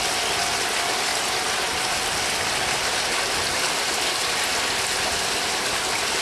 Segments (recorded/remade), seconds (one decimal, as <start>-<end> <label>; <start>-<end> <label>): 0.0-6.2 recorded